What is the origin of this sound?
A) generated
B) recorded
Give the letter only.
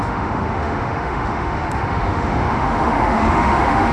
A